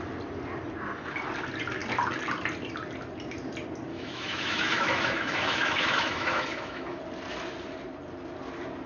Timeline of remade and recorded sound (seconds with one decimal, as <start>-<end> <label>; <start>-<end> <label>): 0.0-3.9 recorded; 3.9-7.0 remade; 7.0-8.9 recorded